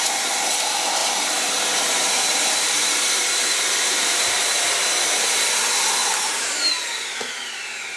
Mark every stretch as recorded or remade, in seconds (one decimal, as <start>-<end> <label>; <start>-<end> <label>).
0.0-1.0 recorded; 1.0-4.7 remade; 4.7-6.0 recorded; 6.0-6.7 remade; 6.7-8.0 recorded